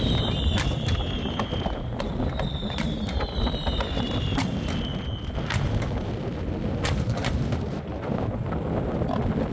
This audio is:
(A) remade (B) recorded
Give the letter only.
B